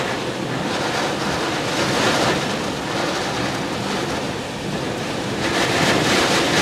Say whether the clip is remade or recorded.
recorded